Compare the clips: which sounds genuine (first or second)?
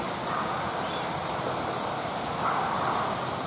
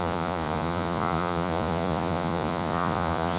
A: first